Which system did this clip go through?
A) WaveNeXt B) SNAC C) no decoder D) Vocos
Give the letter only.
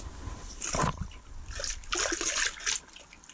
C